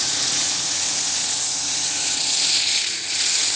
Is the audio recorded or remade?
remade